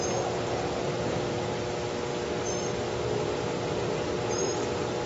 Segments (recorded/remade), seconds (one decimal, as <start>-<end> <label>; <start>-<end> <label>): 0.0-5.1 recorded